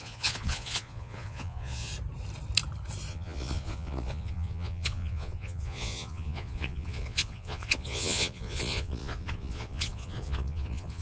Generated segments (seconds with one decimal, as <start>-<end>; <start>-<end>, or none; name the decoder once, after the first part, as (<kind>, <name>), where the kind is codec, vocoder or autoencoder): 0.0-1.9 (vocoder, Vocos); 3.1-11.0